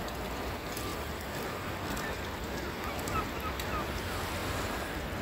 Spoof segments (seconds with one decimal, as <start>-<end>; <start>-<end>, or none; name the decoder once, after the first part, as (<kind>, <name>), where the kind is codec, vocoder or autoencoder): none